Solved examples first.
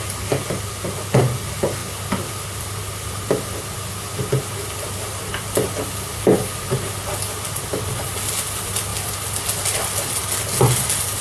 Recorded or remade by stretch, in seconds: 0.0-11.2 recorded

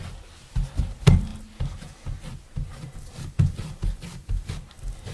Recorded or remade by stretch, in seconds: 0.0-5.1 recorded

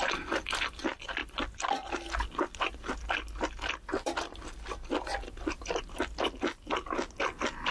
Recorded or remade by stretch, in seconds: 0.0-7.7 recorded

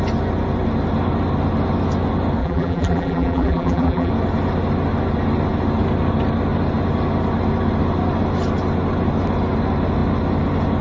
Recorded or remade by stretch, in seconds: 0.0-2.4 recorded; 2.4-4.1 remade; 4.1-10.8 recorded

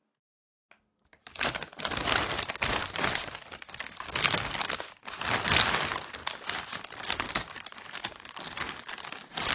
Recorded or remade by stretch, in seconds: 0.0-6.2 recorded; 6.2-8.7 remade; 8.7-9.5 recorded

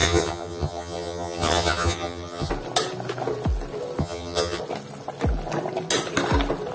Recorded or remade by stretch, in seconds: 0.0-2.5 remade; 2.5-4.0 recorded; 4.0-4.6 remade; 4.6-6.7 recorded

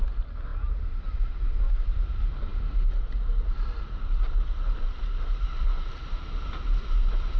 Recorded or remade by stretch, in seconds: 0.0-7.4 recorded